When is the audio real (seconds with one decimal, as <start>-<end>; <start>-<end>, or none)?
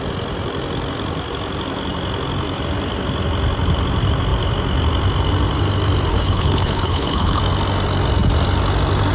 0.0-6.1; 7.4-9.1